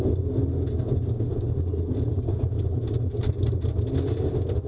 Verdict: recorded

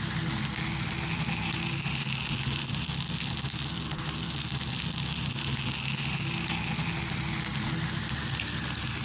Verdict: recorded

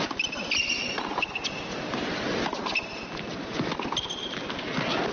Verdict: recorded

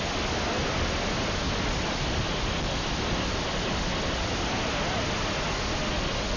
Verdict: recorded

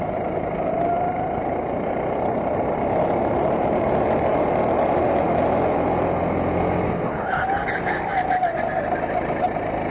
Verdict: recorded